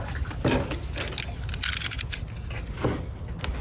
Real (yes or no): yes